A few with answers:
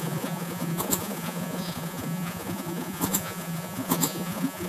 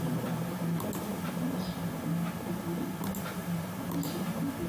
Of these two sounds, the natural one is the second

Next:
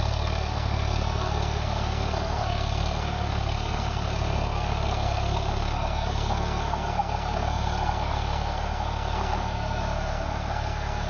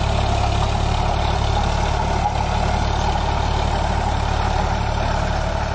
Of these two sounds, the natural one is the second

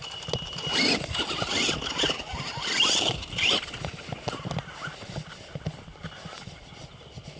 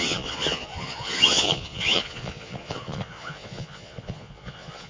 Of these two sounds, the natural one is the first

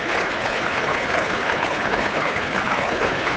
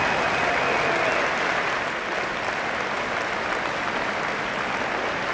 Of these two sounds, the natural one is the second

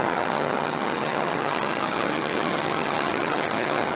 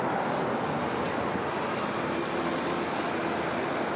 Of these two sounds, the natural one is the second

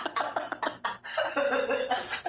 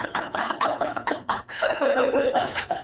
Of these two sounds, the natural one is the first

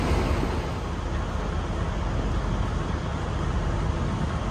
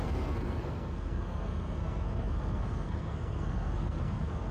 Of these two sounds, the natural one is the first